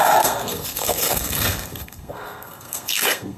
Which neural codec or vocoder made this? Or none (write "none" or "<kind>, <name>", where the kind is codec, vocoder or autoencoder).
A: codec, SNAC